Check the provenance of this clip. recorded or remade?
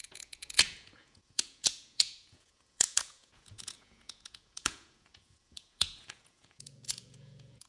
remade